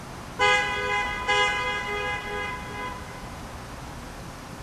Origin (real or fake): real